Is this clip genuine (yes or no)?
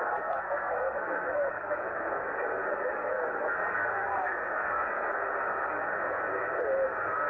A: no